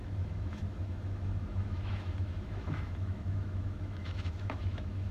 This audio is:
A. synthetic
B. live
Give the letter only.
A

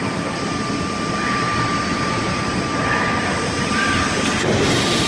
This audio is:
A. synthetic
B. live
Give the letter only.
A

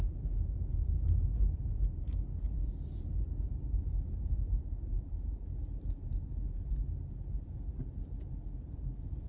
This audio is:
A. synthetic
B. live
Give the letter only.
B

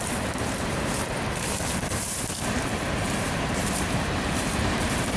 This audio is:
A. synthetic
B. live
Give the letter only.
A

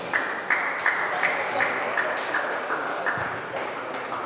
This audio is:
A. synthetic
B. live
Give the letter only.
B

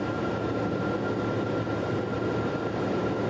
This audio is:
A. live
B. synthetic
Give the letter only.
A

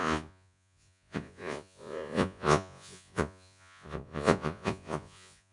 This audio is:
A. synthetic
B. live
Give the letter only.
A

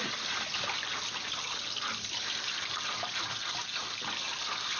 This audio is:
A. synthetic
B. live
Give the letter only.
B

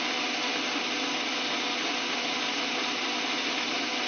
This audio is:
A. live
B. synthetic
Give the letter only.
A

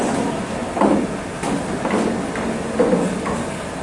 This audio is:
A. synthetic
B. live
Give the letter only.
B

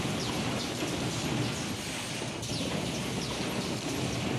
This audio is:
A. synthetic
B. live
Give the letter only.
B